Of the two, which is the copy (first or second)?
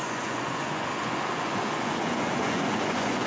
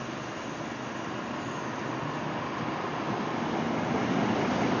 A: first